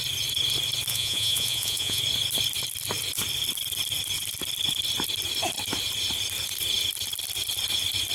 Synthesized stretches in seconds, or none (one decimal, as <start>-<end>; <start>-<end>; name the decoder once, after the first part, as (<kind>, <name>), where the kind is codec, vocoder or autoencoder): 0.9-2.0 (vocoder, Vocos)